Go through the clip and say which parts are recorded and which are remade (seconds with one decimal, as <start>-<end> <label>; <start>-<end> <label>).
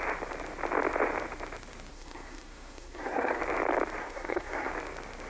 0.0-1.9 recorded; 1.9-3.4 remade; 3.4-4.0 recorded; 4.0-4.7 remade; 4.7-5.3 recorded